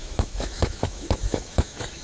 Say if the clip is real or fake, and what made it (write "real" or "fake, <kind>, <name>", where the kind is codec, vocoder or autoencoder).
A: fake, autoencoder, DAC-VAE